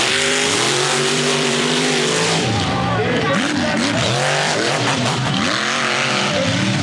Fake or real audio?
fake